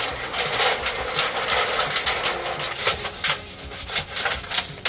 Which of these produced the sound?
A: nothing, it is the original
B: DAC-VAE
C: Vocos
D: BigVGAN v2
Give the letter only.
A